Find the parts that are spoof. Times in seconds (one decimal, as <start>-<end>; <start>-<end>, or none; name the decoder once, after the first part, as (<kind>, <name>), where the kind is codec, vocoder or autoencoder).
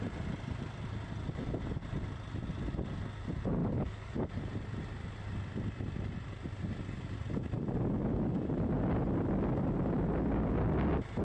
3.6-4.3 (codec, DAC)